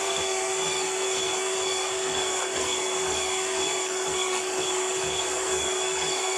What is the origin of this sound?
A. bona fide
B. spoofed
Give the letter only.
B